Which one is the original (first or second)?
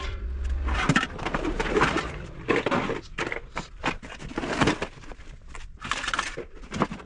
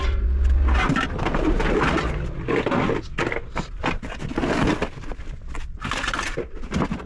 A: second